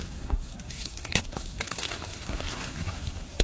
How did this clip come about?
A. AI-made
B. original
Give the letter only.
A